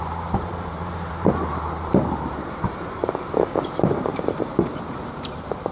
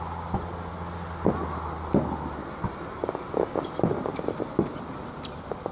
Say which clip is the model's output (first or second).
first